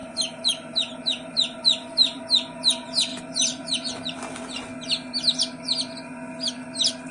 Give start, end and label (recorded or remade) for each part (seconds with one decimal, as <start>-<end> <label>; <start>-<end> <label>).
0.0-2.2 remade; 2.2-3.1 recorded; 3.1-4.2 remade; 4.2-7.1 recorded